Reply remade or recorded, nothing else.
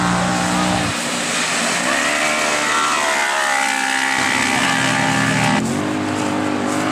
recorded